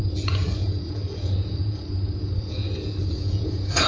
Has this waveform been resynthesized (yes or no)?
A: yes